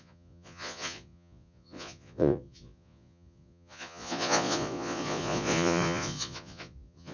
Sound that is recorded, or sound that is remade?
remade